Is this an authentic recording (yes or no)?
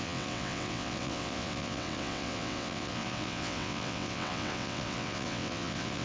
no